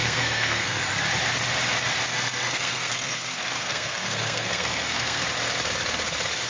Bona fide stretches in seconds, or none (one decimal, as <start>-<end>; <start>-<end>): 0.8-2.1; 5.2-6.5